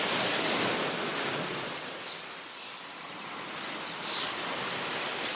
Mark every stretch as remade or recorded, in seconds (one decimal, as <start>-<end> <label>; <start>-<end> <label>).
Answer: 0.0-5.4 remade